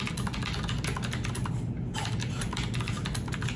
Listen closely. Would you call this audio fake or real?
real